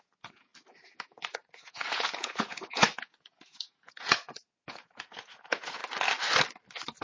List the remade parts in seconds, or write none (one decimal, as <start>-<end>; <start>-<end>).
0.0-0.5; 1.1-5.8

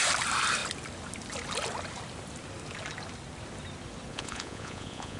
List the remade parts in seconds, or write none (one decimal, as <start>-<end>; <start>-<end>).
4.1-5.2

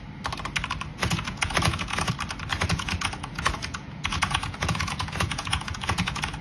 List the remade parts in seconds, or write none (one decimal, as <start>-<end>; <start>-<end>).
1.0-2.1; 2.5-6.4

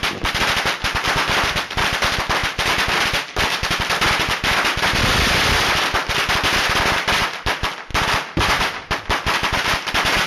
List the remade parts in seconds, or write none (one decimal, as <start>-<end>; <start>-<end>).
none